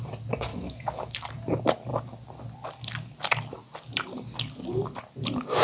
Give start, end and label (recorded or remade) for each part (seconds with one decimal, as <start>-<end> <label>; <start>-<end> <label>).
0.0-0.5 recorded; 0.5-1.1 remade; 1.1-5.6 recorded